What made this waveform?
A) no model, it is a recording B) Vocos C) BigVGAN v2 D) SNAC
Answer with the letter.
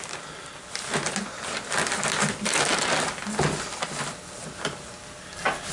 A